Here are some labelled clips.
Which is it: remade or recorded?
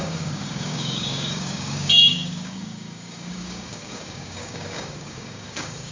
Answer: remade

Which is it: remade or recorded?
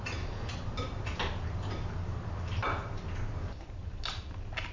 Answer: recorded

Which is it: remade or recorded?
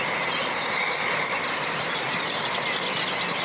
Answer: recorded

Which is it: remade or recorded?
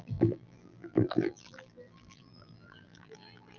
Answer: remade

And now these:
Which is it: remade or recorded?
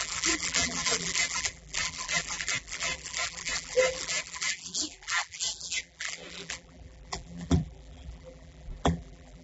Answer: remade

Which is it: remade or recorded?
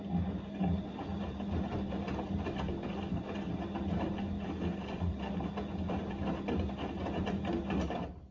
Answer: recorded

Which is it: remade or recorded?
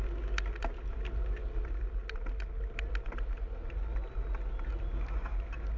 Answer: recorded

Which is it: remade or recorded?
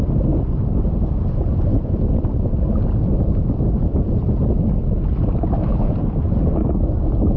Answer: recorded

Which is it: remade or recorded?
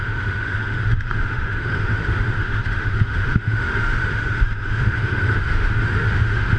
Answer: remade